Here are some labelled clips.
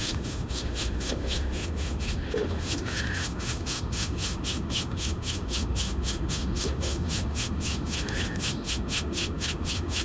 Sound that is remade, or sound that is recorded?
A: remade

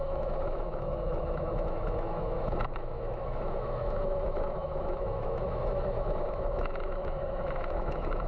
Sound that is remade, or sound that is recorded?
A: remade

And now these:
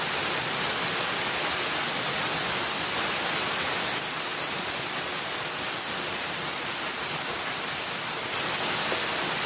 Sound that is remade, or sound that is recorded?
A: recorded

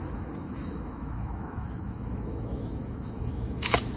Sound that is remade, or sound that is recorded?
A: remade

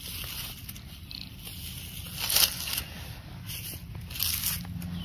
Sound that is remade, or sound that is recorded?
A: recorded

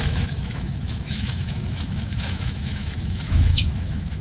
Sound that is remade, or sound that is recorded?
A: remade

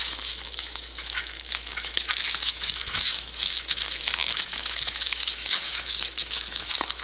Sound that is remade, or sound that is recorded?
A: remade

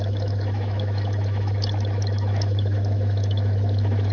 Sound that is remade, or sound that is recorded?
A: remade